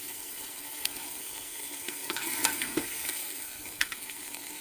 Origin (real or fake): fake